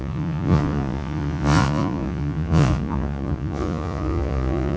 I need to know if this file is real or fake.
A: fake